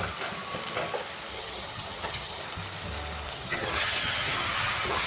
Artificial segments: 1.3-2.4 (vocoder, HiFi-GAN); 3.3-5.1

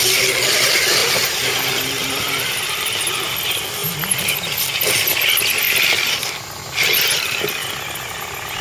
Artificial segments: 1.0-3.0 (vocoder, BigVGAN v2)

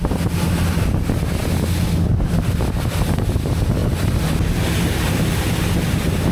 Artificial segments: none

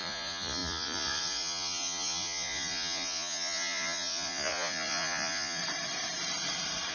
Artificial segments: 0.0-5.6 (vocoder, Vocos)

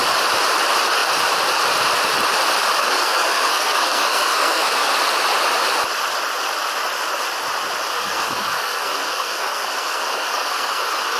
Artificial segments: 2.8-4.9 (codec, SNAC); 7.9-11.2

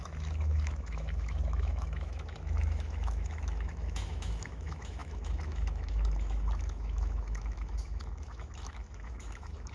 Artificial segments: 0.0-9.7 (autoencoder, DAC-VAE)